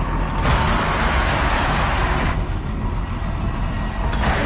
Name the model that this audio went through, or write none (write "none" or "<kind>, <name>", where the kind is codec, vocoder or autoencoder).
none